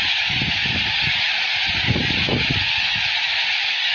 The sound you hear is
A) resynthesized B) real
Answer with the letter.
B